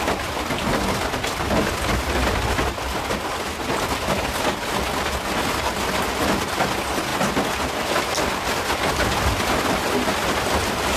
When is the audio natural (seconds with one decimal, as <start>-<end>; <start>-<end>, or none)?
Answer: 0.0-11.0